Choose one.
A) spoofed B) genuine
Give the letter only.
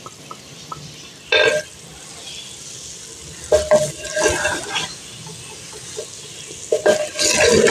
B